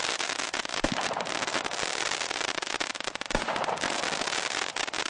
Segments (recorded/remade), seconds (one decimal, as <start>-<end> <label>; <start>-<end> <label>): 0.0-5.1 recorded